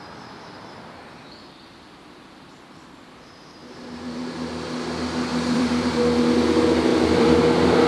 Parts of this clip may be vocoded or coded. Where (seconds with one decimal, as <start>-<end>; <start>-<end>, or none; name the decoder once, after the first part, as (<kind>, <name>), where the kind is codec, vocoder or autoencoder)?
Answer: 3.6-4.2 (vocoder, BigVGAN v2); 5.3-6.0; 6.9-7.4